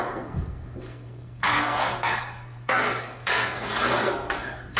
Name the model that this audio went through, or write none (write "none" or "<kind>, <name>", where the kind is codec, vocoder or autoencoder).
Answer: codec, SNAC